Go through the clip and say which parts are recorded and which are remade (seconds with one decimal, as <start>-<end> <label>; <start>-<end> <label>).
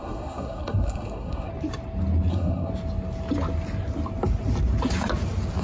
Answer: 0.0-1.5 remade; 1.5-2.3 recorded; 2.3-2.7 remade; 2.7-5.6 recorded